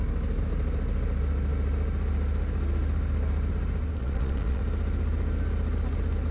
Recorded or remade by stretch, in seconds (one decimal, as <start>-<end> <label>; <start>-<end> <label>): 0.0-4.0 recorded; 4.0-4.6 remade; 4.6-6.3 recorded